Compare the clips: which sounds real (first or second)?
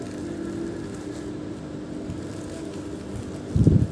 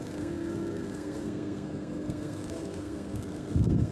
first